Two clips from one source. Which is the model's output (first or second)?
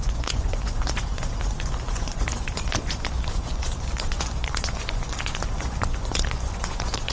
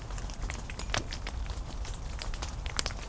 first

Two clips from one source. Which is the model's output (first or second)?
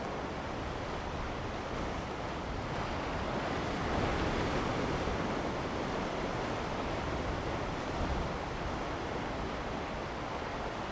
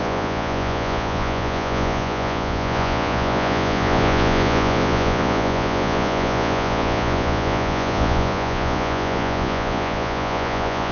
second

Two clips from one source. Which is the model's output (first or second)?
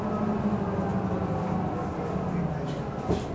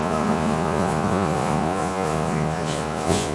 second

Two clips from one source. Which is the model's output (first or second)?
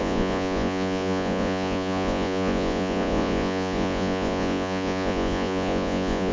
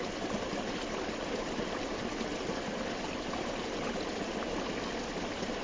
first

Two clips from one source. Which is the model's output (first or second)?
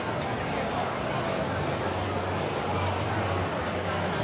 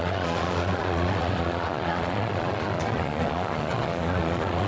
second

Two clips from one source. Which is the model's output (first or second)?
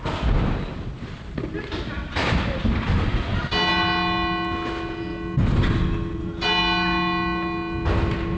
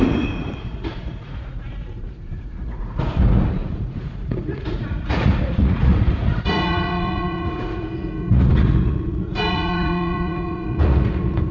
second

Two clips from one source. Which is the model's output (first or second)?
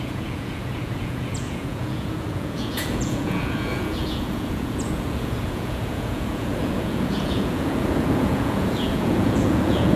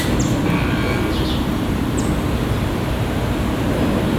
first